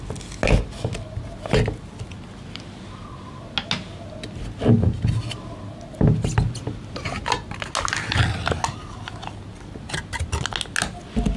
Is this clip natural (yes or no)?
yes